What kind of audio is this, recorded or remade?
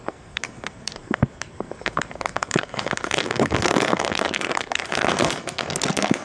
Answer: remade